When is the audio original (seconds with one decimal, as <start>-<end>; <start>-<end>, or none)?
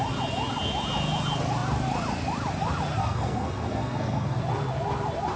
0.0-3.0; 4.4-5.4